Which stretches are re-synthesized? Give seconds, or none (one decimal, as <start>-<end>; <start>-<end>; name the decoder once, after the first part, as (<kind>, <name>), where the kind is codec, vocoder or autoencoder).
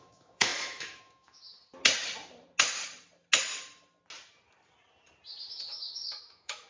0.0-1.5 (autoencoder, DAC-VAE); 5.5-6.7